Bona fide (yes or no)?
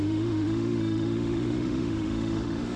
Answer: no